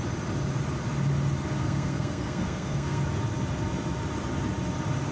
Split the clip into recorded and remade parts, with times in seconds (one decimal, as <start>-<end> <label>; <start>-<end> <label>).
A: 0.0-1.6 recorded; 1.6-3.0 remade; 3.0-5.1 recorded